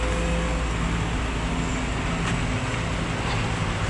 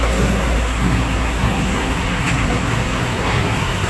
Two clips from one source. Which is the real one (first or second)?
first